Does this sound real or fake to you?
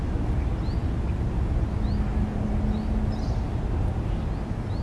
real